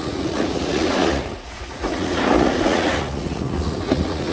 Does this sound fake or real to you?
fake